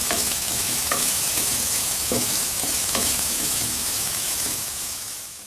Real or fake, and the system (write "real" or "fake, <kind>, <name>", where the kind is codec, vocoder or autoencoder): fake, autoencoder, DAC-VAE